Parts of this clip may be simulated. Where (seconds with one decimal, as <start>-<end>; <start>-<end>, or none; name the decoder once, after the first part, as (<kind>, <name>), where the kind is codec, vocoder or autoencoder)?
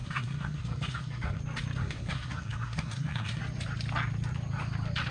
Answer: 0.0-1.4 (codec, SNAC); 1.8-3.4